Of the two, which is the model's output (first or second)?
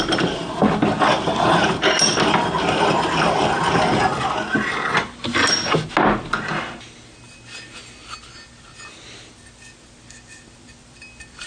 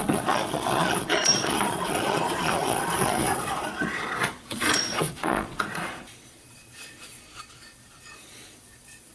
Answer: second